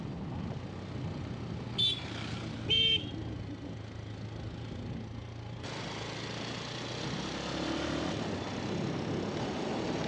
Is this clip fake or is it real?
real